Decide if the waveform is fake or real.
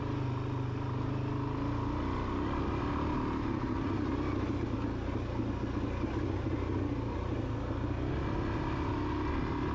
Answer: real